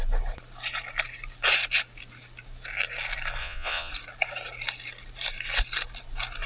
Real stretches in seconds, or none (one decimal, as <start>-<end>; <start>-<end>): 0.0-3.4; 3.9-6.5

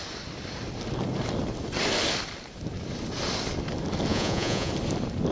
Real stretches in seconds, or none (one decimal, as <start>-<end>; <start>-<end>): 0.0-4.1; 4.7-5.3

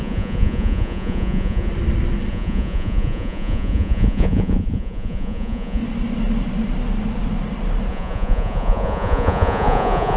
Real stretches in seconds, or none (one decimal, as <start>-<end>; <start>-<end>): 1.7-2.3; 5.8-7.9

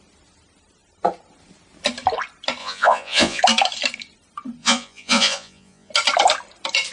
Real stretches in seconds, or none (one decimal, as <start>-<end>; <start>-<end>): 0.0-2.6; 3.4-4.6; 5.9-6.9